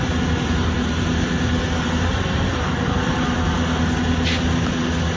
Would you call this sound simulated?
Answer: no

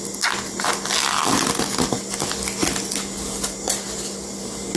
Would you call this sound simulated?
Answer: no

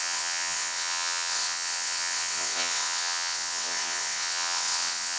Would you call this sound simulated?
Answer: yes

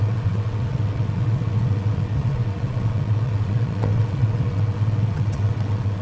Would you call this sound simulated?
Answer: yes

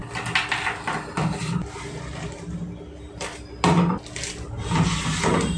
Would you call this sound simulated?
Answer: no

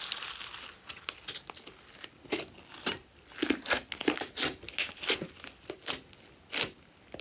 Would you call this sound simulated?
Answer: no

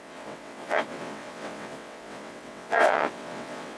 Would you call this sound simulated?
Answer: yes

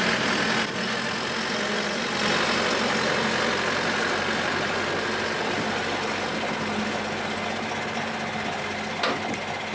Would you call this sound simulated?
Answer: no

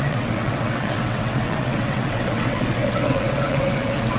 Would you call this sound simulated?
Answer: yes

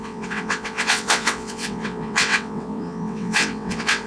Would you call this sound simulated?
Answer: yes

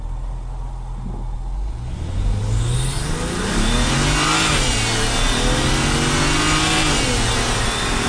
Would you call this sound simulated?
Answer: no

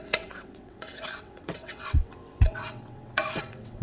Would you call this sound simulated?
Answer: yes